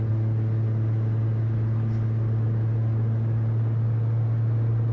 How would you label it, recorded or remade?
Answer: recorded